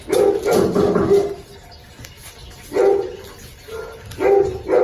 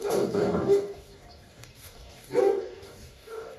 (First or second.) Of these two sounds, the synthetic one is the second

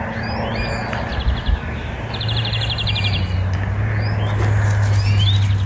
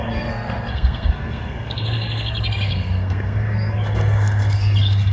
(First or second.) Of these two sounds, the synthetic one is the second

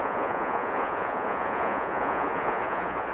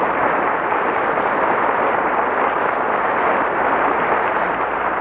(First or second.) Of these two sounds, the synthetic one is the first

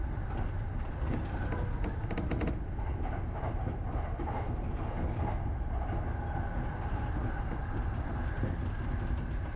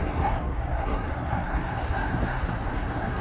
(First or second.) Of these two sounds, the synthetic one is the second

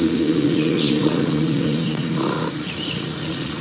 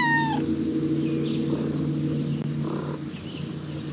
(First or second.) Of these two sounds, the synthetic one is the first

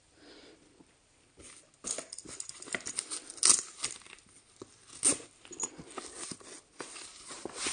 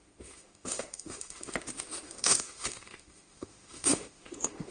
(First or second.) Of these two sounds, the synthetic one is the second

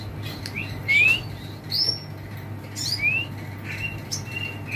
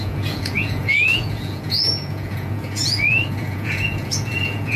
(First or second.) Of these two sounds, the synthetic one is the second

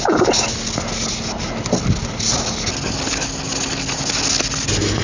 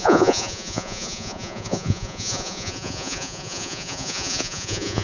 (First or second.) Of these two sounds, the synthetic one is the second